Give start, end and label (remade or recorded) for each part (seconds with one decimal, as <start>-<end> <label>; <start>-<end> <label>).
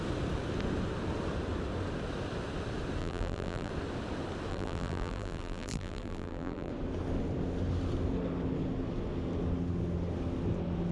0.0-3.0 recorded; 3.0-3.7 remade; 3.7-4.5 recorded; 4.5-6.7 remade; 6.7-10.9 recorded